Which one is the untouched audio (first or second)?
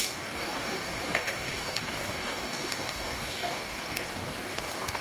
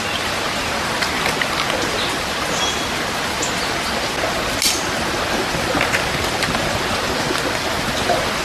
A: second